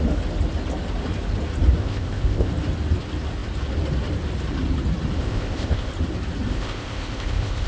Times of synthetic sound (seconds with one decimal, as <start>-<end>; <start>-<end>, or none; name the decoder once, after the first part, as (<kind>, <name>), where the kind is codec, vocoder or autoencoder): 1.8-2.5 (codec, ZipCodec); 5.2-5.9; 6.5-7.7